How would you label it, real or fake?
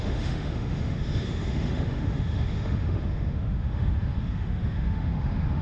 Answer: fake